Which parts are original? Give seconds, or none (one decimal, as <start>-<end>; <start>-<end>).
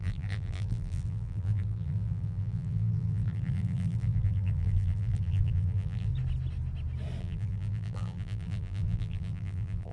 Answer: 6.1-7.2